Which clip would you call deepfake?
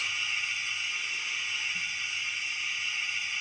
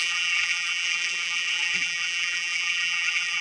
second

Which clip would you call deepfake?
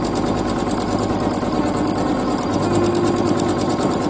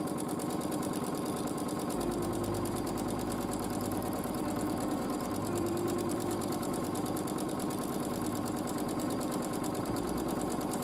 second